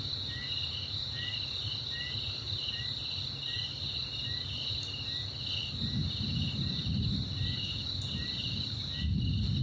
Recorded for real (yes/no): yes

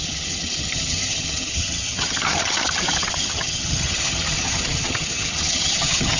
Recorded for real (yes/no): no